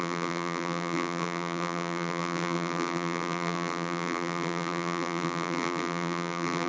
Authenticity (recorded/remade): remade